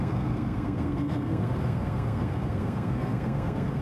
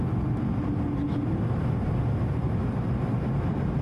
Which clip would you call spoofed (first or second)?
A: first